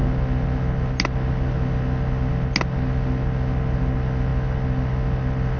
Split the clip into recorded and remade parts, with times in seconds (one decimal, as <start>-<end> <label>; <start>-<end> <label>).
0.0-5.6 recorded